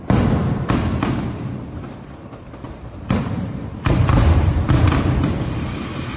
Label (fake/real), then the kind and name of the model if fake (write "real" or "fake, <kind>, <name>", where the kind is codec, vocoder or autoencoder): real